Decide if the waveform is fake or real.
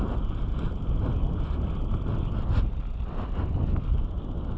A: real